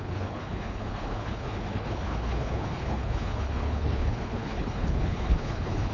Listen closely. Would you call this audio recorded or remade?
remade